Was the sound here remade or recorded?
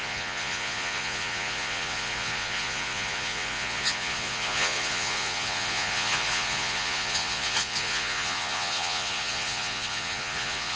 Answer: remade